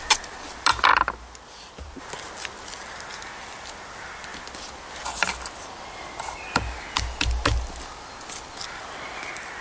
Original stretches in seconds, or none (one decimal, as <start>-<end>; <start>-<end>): 0.0-9.6